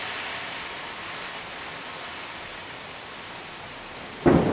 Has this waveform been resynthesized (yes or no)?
no